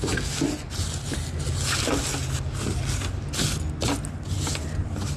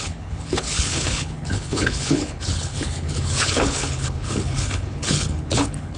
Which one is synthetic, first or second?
second